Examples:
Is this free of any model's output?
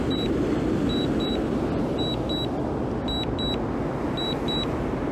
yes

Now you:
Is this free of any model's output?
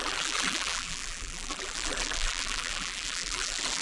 no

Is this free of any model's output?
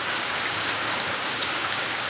no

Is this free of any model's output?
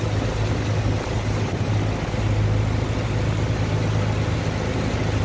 yes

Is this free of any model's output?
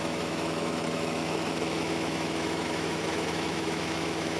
no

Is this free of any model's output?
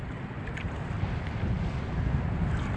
yes